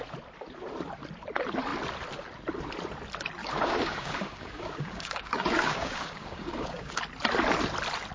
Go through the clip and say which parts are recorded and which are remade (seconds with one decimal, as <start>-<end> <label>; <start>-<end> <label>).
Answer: 0.0-3.4 recorded; 3.4-7.0 remade; 7.0-8.1 recorded